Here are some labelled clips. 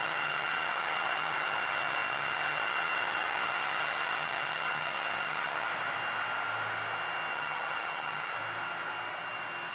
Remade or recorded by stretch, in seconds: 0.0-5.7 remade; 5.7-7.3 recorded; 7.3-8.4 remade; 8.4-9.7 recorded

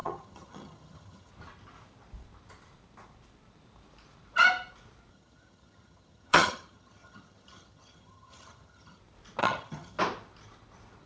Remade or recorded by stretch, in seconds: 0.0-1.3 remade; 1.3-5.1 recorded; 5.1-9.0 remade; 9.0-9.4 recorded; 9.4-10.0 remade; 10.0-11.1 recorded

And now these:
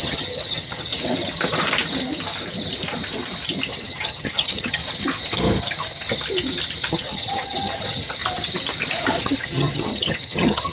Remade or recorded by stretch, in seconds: 0.0-0.9 remade; 0.9-3.7 recorded; 3.7-4.8 remade; 4.8-6.9 recorded; 6.9-8.2 remade; 8.2-9.2 recorded; 9.2-10.7 remade

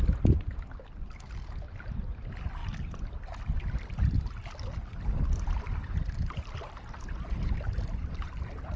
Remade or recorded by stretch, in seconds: 0.0-8.8 recorded